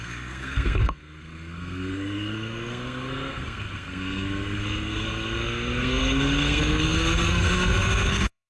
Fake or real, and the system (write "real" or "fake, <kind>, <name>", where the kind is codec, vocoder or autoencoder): fake, codec, SNAC